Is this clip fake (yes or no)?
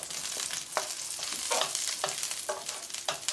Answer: no